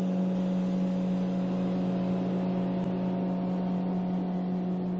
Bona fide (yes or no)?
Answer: yes